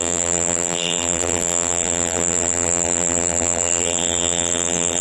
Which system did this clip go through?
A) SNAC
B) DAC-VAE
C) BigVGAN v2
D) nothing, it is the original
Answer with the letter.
C